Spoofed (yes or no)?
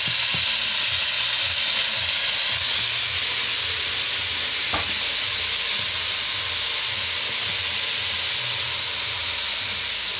no